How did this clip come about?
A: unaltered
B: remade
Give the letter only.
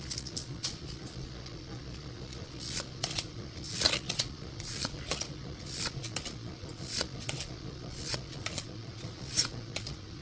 B